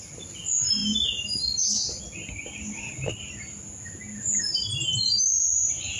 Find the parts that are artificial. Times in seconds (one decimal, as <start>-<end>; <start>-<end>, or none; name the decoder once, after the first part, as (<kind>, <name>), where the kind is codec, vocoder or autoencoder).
none